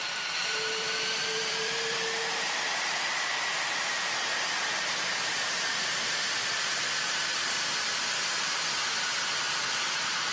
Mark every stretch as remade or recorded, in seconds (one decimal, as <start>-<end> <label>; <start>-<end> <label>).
0.0-7.4 remade; 7.4-8.1 recorded; 8.1-10.3 remade